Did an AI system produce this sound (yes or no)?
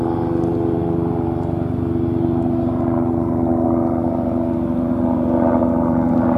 no